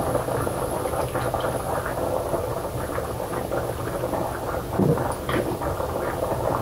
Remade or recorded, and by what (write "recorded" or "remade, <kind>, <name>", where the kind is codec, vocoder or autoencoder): recorded